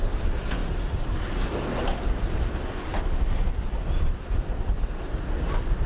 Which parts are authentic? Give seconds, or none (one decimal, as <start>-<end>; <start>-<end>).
0.0-5.9